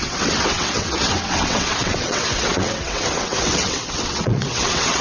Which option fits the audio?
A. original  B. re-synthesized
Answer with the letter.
B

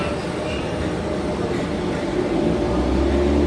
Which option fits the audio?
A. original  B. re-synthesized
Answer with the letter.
A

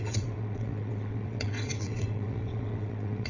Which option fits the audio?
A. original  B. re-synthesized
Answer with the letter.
B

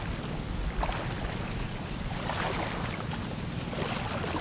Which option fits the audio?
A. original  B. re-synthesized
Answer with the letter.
A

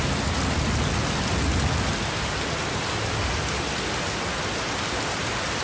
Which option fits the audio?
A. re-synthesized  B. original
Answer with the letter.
B